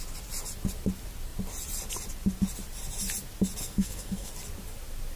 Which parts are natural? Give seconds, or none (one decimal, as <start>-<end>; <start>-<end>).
0.0-3.6; 4.3-5.2